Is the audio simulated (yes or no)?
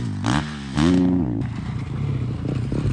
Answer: no